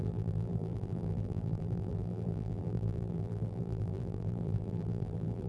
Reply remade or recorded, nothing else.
remade